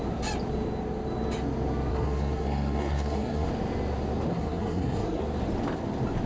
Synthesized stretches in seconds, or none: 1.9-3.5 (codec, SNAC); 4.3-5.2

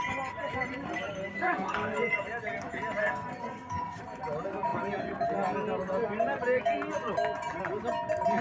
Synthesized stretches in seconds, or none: 1.3-1.9 (codec, SNAC); 3.0-4.0

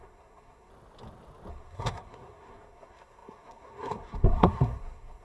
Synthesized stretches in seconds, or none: 0.0-0.7 (codec, SNAC); 1.5-5.2

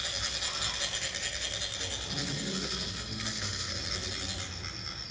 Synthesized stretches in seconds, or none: 2.2-3.7 (codec, SNAC)